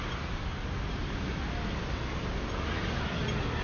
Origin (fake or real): real